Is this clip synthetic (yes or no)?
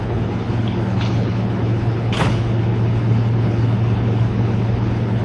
yes